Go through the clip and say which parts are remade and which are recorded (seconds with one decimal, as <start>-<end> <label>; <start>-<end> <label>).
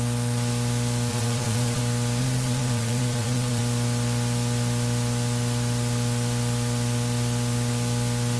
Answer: 0.0-1.1 recorded; 1.1-1.8 remade; 1.8-2.2 recorded; 2.2-3.6 remade; 3.6-8.4 recorded